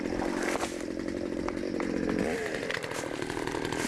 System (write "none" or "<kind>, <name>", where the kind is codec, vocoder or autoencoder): none